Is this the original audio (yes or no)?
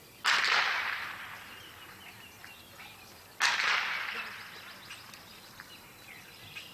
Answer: yes